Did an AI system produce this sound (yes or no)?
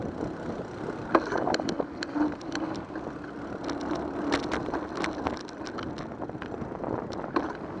no